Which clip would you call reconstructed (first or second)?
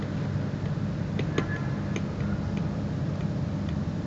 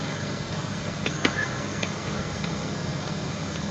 second